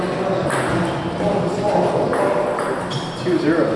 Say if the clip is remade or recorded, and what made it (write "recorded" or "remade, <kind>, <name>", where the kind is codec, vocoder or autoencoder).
recorded